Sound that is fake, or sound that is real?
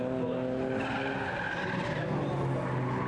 real